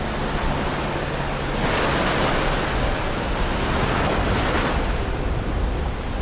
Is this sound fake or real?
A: real